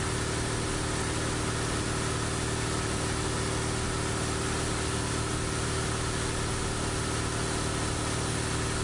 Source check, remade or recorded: recorded